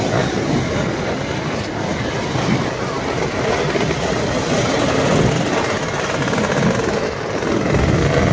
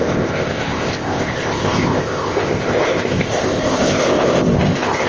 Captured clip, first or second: first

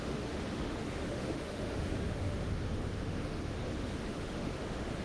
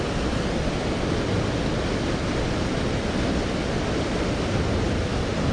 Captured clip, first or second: second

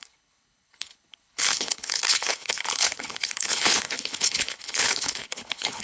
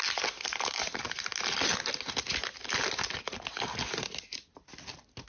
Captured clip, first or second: second